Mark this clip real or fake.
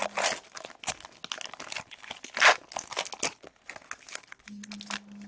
real